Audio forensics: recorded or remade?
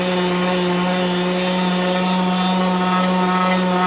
recorded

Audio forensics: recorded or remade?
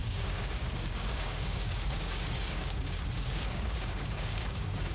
remade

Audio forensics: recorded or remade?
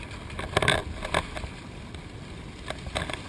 recorded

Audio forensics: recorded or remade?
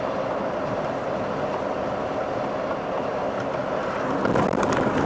recorded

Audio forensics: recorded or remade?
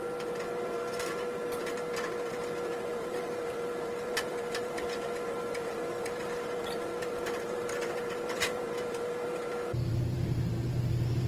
remade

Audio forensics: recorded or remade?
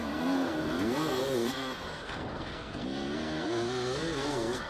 remade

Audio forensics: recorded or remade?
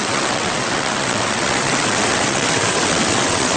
remade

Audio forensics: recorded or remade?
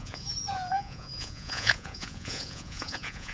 remade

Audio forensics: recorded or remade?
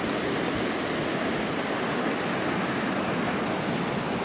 recorded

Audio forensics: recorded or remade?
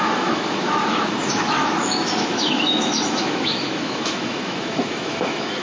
remade